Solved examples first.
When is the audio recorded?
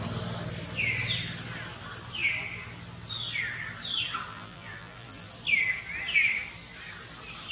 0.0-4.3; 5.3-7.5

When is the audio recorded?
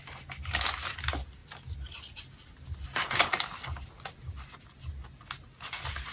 0.0-1.4; 3.9-6.1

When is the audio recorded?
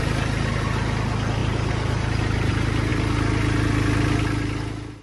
0.0-1.4; 2.5-5.0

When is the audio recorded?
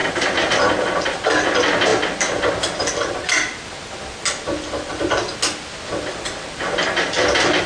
0.5-7.7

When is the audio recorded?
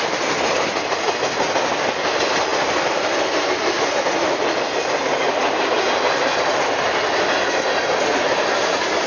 0.0-8.1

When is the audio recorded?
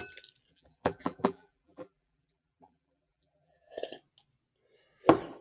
0.0-0.5; 3.7-5.4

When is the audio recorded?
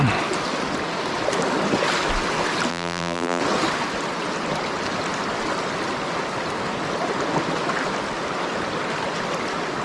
0.0-2.7; 3.4-9.8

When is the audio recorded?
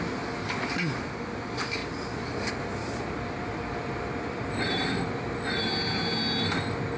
0.0-1.8; 5.3-7.0